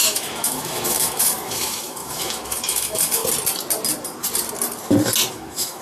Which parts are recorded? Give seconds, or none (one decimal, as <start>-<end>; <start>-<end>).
3.2-5.3